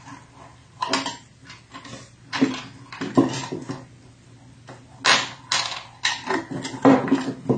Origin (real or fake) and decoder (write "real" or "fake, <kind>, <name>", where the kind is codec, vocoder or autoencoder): real